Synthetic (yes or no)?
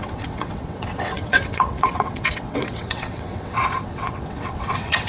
yes